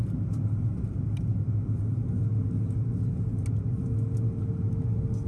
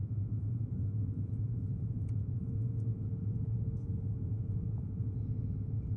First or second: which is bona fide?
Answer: first